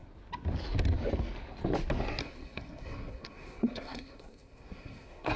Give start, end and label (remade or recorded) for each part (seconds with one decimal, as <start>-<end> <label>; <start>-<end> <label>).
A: 0.0-2.2 recorded; 2.2-5.4 remade